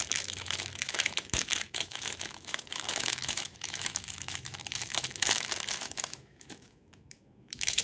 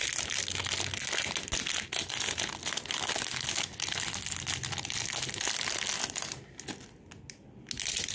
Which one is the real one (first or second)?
second